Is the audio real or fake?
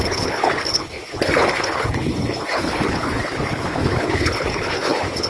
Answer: fake